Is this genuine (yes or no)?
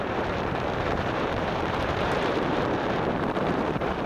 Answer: no